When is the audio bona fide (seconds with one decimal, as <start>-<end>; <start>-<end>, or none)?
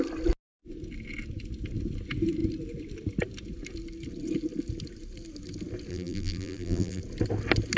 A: 0.0-5.9; 7.0-7.8